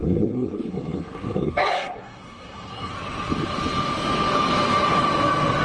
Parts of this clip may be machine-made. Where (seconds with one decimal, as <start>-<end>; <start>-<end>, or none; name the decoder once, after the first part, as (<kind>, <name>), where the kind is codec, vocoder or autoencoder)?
0.0-2.9 (codec, SNAC)